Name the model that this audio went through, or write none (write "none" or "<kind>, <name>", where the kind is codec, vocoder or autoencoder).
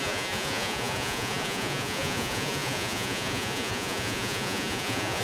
vocoder, Vocos